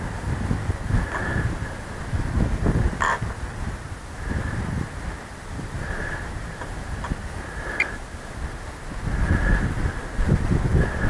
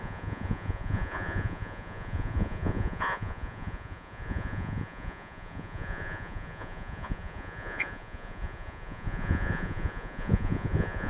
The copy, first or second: second